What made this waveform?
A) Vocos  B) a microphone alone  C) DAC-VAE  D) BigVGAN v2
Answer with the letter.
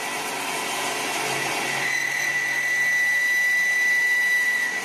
B